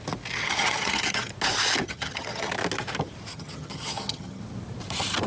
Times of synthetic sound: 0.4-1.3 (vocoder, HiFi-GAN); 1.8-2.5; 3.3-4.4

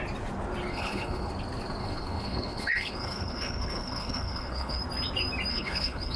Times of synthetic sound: 0.7-1.3 (codec, HILCodec); 1.8-4.8; 5.5-6.2

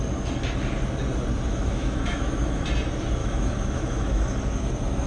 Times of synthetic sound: 1.5-2.6 (autoencoder, DAC-VAE); 3.2-4.2

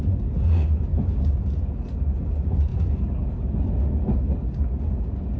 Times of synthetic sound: none

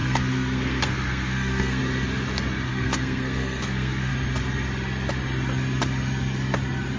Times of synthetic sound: 0.0-1.8 (codec, SNAC); 2.7-4.1

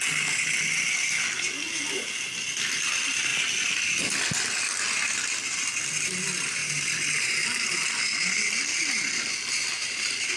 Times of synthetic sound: 6.6-7.4 (vocoder, BigVGAN v2)